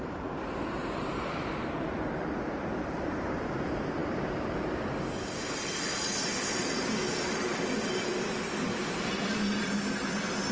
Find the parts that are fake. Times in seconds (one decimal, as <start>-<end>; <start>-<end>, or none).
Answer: none